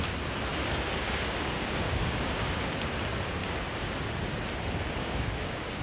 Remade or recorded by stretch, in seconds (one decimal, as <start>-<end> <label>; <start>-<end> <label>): 0.0-0.5 recorded; 0.5-2.9 remade; 2.9-5.0 recorded; 5.0-5.8 remade